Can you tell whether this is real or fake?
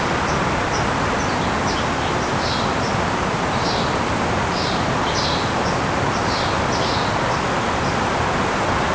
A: real